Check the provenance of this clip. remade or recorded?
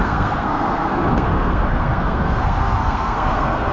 remade